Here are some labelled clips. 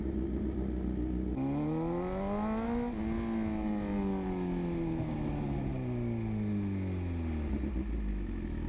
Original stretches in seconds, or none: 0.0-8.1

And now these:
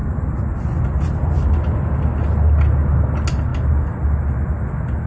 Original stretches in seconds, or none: 0.0-5.1

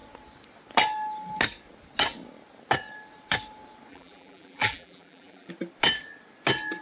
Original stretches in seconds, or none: 0.0-3.9; 5.5-6.8

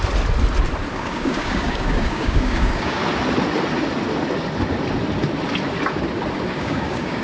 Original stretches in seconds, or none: 0.0-0.9; 3.0-6.5

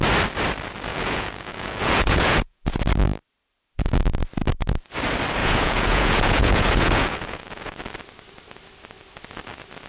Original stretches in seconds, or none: 0.0-0.9; 2.8-5.4; 7.8-9.9